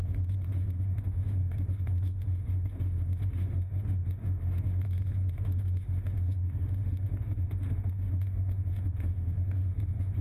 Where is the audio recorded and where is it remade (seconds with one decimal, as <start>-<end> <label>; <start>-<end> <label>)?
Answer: 0.0-10.2 remade